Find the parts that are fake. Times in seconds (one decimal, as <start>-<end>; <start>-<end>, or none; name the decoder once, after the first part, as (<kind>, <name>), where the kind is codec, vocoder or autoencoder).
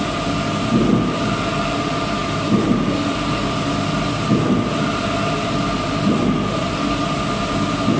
none